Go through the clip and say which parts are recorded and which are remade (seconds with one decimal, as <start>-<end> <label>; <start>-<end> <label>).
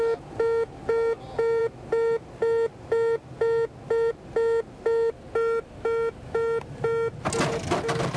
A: 0.0-8.2 recorded